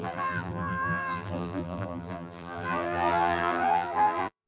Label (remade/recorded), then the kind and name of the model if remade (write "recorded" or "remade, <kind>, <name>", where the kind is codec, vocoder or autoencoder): remade, vocoder, BigVGAN v2